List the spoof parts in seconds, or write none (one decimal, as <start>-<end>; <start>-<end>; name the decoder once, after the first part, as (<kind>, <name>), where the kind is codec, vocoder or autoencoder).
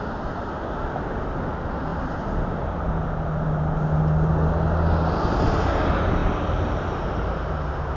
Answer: none